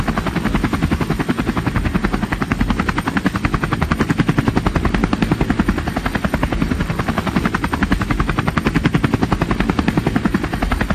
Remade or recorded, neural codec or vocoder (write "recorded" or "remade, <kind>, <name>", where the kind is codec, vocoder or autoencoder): recorded